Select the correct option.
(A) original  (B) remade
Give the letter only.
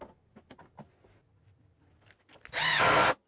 A